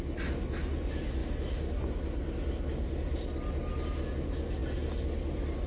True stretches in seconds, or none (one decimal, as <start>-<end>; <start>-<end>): 0.0-5.7